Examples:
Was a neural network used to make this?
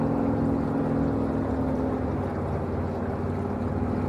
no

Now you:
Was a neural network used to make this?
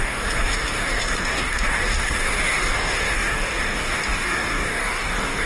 yes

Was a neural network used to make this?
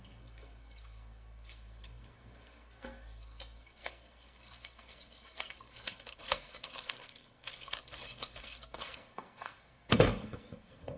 yes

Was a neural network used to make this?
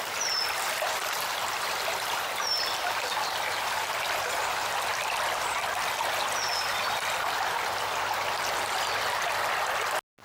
no